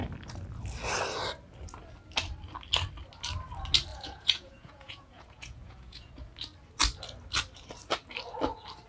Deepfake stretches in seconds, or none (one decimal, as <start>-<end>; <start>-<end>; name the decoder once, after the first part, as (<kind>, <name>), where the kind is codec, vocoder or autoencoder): 3.9-6.1 (vocoder, Vocos)